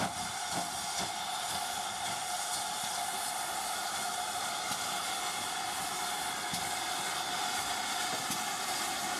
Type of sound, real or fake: real